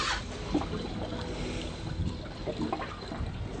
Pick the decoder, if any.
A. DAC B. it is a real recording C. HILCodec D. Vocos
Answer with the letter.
B